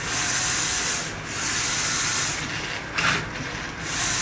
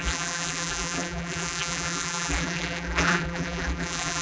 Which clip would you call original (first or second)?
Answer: first